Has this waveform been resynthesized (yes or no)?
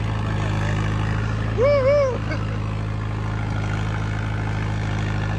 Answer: no